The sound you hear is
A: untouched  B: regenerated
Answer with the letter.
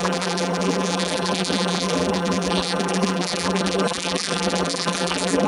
B